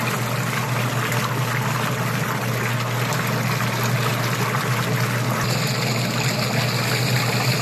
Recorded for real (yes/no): yes